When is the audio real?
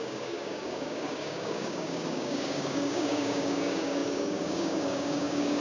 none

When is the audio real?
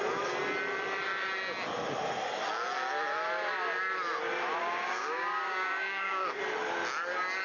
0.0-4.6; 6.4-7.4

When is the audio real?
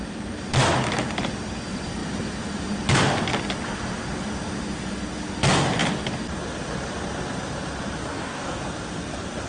0.0-8.1; 8.6-9.5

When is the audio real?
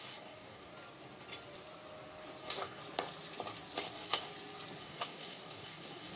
0.7-2.4; 2.8-3.9; 4.3-4.8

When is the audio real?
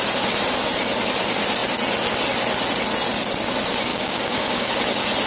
0.0-3.9; 4.7-5.3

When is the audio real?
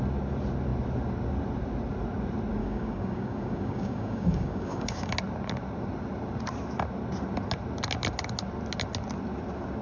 0.0-2.6; 5.1-9.8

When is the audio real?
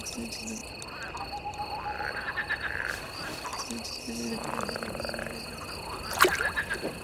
0.0-7.0